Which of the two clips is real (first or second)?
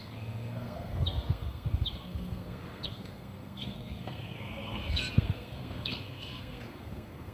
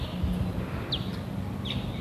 second